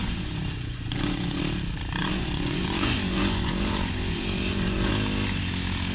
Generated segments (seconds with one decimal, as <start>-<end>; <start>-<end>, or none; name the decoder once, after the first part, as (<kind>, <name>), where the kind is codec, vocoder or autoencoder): 0.0-1.4 (vocoder, Vocos); 2.0-4.9